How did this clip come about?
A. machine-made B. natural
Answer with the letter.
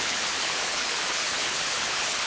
A